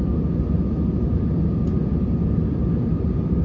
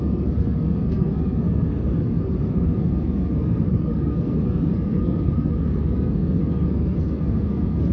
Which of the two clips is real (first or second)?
first